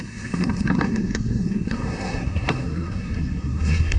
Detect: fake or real fake